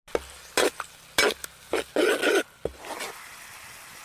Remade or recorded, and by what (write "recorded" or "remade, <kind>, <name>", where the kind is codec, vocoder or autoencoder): recorded